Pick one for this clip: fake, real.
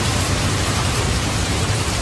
fake